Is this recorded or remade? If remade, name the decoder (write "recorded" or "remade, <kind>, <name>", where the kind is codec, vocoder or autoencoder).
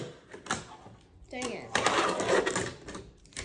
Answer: recorded